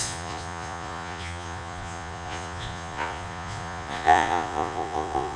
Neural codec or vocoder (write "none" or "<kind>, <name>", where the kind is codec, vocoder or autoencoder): vocoder, Vocos